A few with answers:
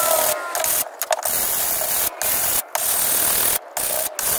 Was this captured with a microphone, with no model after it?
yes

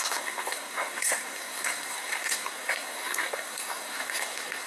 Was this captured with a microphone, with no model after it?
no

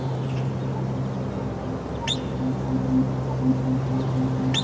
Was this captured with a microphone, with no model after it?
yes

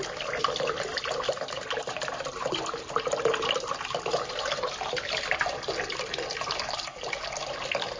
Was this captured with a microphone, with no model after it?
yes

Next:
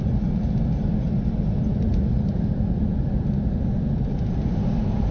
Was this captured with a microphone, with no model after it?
yes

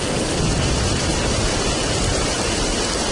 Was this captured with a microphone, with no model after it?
no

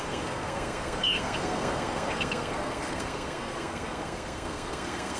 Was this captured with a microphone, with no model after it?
no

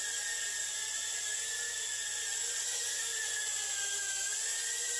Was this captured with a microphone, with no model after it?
yes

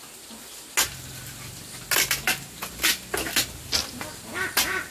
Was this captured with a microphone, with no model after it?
yes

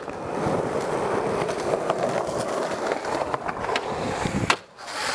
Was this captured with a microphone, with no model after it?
yes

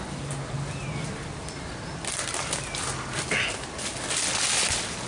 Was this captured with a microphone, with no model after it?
yes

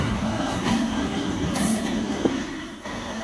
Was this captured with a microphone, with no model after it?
no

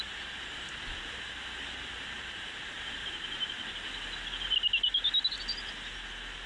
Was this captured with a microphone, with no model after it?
yes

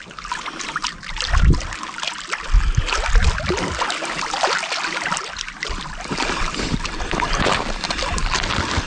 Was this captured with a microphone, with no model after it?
yes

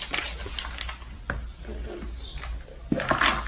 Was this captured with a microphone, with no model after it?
yes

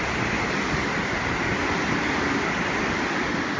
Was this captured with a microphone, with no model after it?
yes